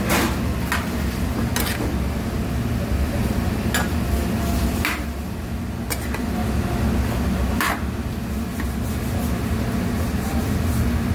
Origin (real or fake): real